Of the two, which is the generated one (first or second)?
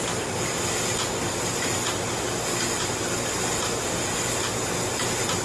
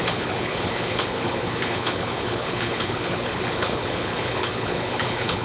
second